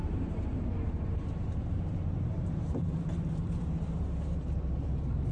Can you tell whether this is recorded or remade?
remade